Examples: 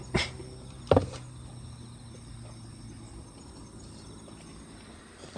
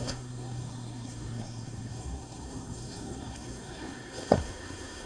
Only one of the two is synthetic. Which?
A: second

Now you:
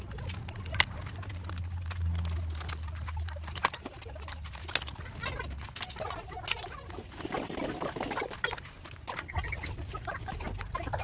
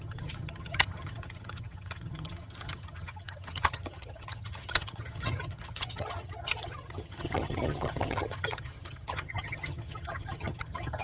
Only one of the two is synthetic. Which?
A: second